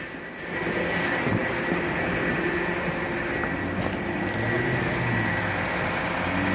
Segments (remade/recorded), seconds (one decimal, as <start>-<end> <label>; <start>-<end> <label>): 0.0-6.5 recorded